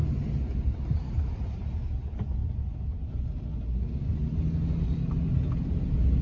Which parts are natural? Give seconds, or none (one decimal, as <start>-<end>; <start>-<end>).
0.0-6.2